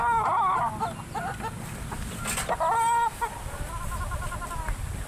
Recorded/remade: recorded